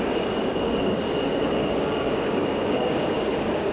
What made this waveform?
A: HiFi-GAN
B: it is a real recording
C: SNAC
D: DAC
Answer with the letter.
D